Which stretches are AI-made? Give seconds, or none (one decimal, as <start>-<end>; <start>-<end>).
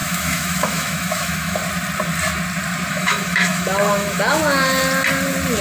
0.0-1.6; 2.9-4.4